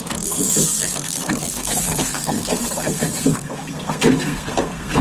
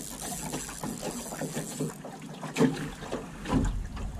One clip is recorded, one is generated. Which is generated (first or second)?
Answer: first